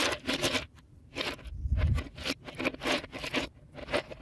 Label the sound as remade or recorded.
remade